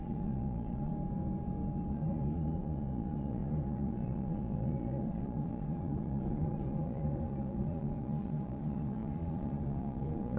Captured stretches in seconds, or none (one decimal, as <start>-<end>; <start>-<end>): 0.9-1.9